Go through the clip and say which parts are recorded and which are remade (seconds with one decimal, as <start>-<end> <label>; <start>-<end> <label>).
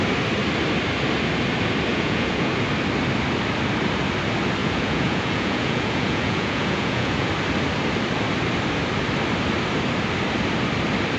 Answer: 0.0-1.9 recorded; 1.9-2.5 remade; 2.5-4.6 recorded; 4.6-7.3 remade; 7.3-11.2 recorded